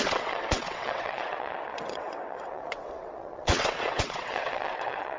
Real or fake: fake